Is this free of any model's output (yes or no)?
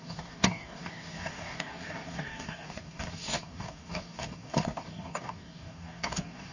no